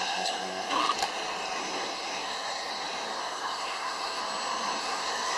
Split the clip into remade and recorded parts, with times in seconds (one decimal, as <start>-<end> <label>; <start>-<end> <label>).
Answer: 0.0-0.8 remade; 0.8-1.6 recorded; 1.6-2.7 remade; 2.7-3.2 recorded; 3.2-4.2 remade; 4.2-4.8 recorded; 4.8-5.4 remade